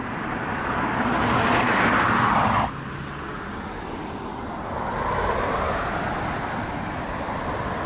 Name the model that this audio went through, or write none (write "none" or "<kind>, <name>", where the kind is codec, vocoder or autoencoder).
none